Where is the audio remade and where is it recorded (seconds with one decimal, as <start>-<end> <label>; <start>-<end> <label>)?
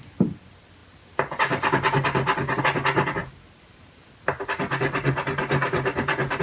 0.0-3.2 recorded; 3.2-6.4 remade